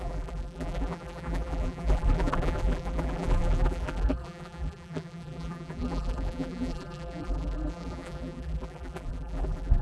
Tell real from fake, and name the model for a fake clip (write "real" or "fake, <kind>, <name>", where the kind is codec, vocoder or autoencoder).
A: fake, vocoder, BigVGAN v2